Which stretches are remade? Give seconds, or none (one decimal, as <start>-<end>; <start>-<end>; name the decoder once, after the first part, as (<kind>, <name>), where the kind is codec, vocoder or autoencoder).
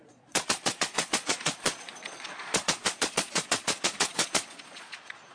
0.0-5.3 (vocoder, Vocos)